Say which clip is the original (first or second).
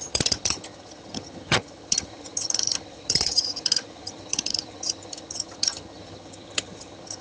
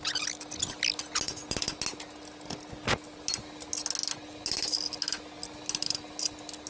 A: second